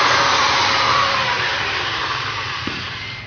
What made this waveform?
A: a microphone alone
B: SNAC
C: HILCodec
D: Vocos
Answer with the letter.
A